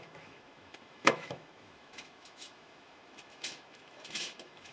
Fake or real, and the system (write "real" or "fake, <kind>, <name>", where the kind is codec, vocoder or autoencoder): fake, autoencoder, DAC-VAE